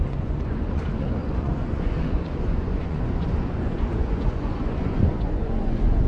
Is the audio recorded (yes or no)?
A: no